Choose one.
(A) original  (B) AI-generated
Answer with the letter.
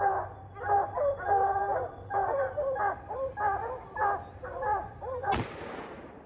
B